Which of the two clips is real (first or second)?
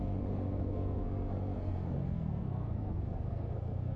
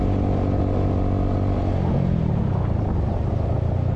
second